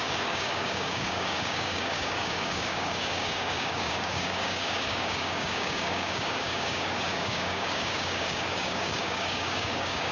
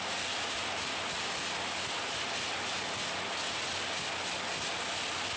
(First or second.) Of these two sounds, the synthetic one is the first